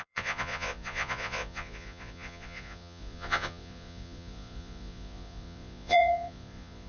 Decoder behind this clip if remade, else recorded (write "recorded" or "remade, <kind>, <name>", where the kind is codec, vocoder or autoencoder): remade, vocoder, Vocos